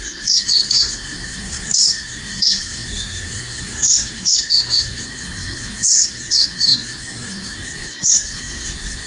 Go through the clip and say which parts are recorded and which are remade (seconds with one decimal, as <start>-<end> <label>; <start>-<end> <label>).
0.0-9.1 remade